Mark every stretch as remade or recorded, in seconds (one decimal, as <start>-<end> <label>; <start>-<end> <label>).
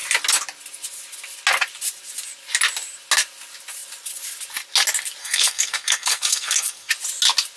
0.0-5.2 recorded; 5.2-6.9 remade; 6.9-7.6 recorded